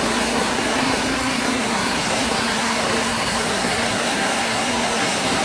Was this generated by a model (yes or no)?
yes